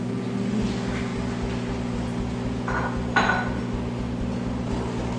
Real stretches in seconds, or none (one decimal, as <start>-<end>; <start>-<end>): 0.0-5.2